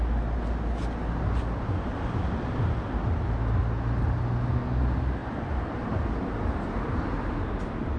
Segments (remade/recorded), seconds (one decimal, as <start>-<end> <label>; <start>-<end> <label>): 0.0-5.2 recorded; 5.2-7.6 remade; 7.6-8.0 recorded